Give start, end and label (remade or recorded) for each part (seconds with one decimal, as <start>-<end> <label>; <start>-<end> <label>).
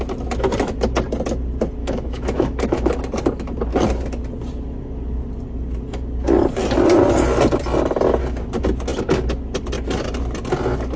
0.0-1.8 recorded; 1.8-3.0 remade; 3.0-11.0 recorded